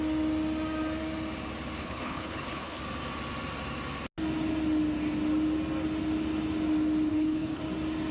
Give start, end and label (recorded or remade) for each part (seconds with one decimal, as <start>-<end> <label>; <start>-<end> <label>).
0.0-1.8 recorded; 1.8-2.8 remade; 2.8-7.1 recorded; 7.1-7.6 remade; 7.6-8.1 recorded